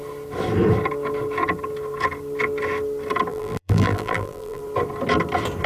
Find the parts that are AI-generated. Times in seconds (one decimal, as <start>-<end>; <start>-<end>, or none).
3.3-4.6